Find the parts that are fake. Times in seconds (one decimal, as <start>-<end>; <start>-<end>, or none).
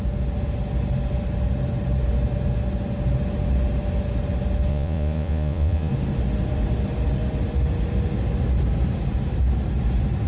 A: 4.7-5.9